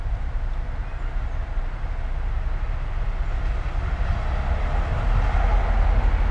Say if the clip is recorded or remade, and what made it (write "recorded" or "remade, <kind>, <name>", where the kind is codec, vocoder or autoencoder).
recorded